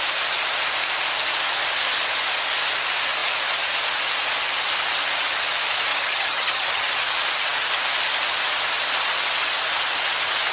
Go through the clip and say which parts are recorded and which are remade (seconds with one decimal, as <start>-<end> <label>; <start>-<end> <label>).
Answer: 0.0-5.9 recorded; 5.9-6.9 remade; 6.9-10.5 recorded